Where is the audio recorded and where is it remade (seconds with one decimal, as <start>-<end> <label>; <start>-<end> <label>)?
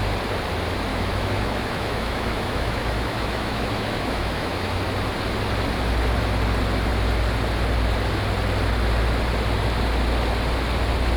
0.0-0.9 recorded; 0.9-4.8 remade; 4.8-11.2 recorded